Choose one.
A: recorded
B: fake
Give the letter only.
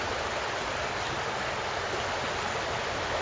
A